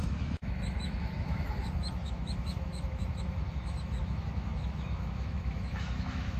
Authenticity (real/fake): fake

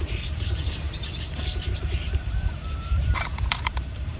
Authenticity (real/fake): fake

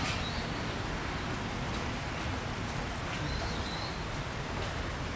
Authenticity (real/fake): real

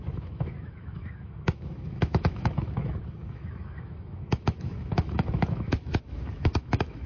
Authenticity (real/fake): fake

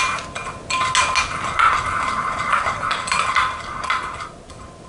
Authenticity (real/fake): real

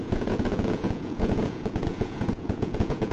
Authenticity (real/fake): fake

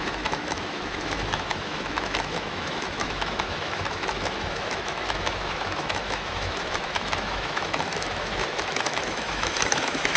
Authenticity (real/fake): fake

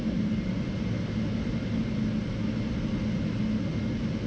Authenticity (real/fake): real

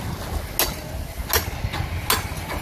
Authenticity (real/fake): real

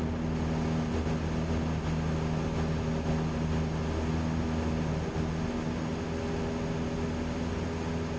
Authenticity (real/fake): real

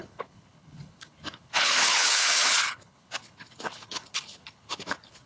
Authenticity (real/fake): fake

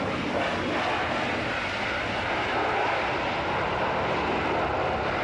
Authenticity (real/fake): real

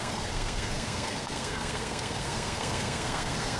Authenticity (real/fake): fake